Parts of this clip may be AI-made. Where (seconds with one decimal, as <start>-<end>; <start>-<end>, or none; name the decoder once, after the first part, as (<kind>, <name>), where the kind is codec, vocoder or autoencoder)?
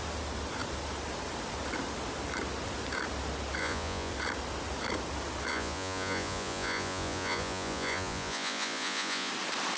3.6-4.1 (vocoder, Vocos); 5.5-9.3